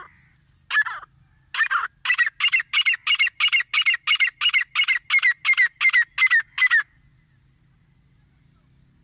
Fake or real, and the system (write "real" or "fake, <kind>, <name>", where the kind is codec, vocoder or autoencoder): real